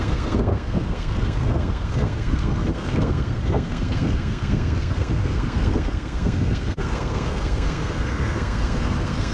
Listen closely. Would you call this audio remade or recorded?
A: remade